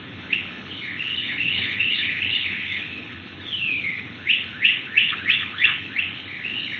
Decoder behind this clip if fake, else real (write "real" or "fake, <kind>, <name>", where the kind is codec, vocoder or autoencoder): fake, codec, HILCodec